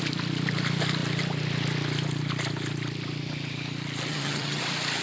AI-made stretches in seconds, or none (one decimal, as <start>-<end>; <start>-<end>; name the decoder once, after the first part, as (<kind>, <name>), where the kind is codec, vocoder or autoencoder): 4.1-4.6 (vocoder, HiFi-GAN)